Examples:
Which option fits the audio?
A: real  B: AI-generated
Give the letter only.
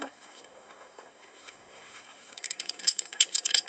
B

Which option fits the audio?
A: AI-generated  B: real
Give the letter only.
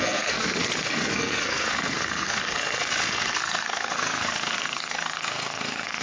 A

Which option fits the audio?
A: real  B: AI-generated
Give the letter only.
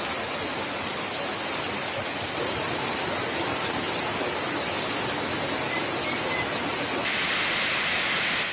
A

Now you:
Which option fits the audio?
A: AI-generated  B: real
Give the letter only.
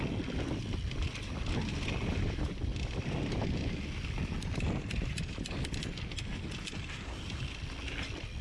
B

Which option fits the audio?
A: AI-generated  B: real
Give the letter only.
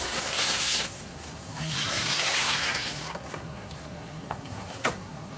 A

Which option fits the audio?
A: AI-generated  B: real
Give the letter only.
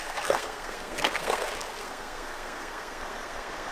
A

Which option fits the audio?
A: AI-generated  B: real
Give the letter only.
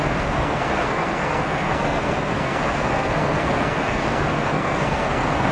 A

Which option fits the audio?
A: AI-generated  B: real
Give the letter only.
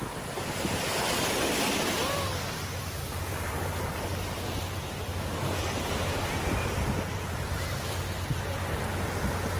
B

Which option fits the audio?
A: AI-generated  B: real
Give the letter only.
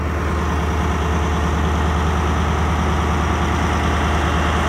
B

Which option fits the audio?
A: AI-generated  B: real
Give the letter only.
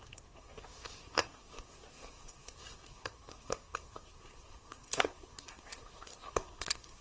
A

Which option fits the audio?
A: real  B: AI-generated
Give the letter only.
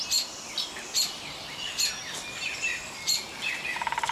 A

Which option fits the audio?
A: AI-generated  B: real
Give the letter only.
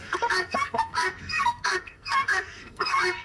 A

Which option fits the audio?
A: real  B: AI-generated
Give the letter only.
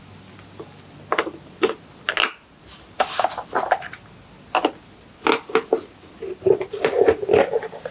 A